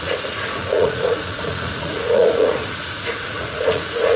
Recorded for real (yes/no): no